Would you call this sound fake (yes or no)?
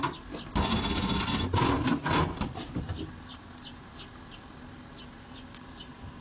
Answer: no